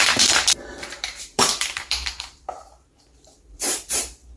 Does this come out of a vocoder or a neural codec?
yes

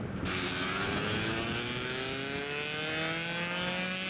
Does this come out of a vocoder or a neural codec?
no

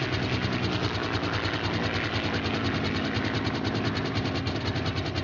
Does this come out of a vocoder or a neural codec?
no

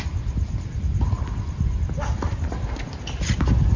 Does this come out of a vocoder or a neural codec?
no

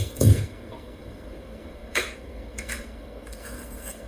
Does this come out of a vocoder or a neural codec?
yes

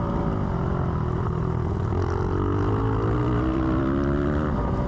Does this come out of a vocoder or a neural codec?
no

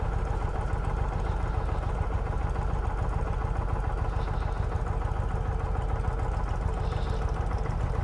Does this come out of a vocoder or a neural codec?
no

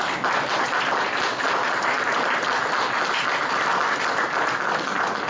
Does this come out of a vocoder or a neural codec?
no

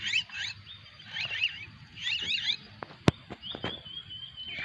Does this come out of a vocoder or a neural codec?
no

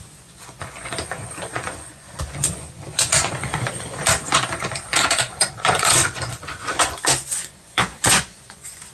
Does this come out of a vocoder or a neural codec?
yes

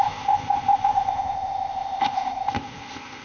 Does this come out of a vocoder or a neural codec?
yes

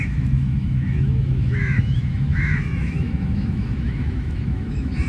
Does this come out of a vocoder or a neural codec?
yes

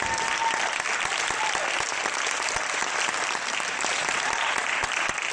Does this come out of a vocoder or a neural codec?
no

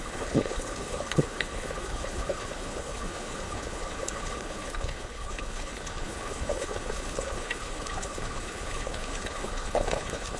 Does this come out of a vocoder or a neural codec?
yes